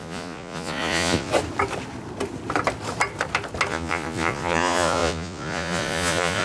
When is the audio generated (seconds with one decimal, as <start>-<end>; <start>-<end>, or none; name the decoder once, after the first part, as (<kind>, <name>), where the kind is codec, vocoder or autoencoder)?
0.0-1.3 (vocoder, Vocos); 3.7-6.4